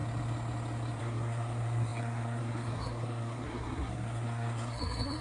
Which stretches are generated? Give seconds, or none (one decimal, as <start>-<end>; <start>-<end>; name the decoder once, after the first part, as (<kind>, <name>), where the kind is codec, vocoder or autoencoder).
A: 1.0-5.2 (codec, SNAC)